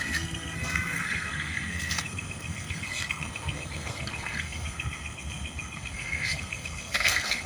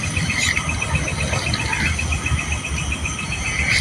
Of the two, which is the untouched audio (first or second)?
second